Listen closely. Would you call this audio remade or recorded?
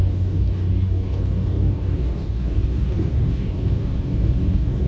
remade